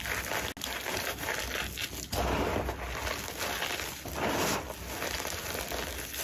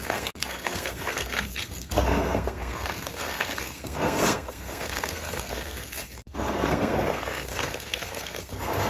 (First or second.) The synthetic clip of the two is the second